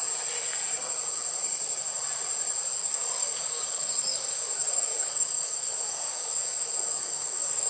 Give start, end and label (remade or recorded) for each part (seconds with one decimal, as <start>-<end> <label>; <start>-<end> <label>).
0.0-2.8 recorded; 2.8-7.7 remade